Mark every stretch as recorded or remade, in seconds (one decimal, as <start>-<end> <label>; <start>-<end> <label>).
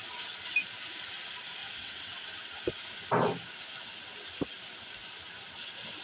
0.0-1.6 recorded; 1.6-2.8 remade; 2.8-6.0 recorded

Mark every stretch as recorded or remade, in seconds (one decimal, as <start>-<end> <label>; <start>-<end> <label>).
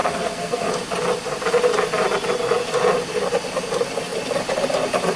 0.0-0.7 remade; 0.7-5.2 recorded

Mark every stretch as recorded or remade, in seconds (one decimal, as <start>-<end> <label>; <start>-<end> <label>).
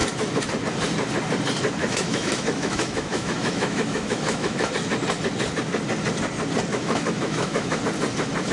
0.0-1.8 recorded; 1.8-4.7 remade; 4.7-6.7 recorded; 6.7-7.8 remade; 7.8-8.5 recorded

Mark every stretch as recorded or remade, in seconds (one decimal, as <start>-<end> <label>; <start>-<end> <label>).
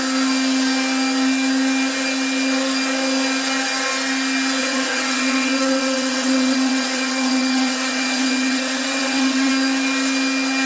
0.0-4.6 recorded; 4.6-9.5 remade; 9.5-10.7 recorded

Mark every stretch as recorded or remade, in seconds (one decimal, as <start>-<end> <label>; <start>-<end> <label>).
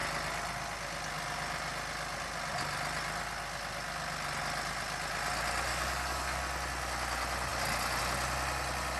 0.0-5.7 recorded; 5.7-6.4 remade; 6.4-9.0 recorded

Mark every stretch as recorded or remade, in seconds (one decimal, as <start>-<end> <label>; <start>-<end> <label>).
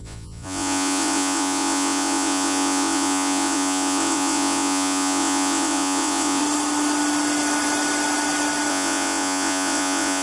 0.0-6.4 remade; 6.4-8.7 recorded; 8.7-10.2 remade